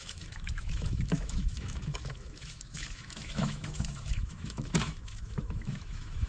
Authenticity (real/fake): fake